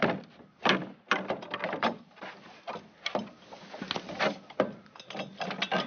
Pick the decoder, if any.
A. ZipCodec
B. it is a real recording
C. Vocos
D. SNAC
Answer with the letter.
B